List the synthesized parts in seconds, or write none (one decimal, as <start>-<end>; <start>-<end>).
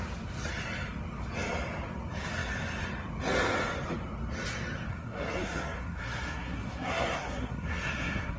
4.9-8.4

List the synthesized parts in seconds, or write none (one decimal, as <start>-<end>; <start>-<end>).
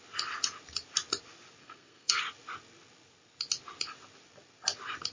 1.6-2.2